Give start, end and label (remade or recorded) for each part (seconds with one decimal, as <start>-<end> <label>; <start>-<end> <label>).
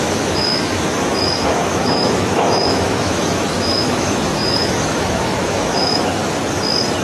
0.0-6.2 remade; 6.2-7.0 recorded